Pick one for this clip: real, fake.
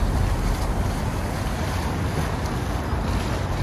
real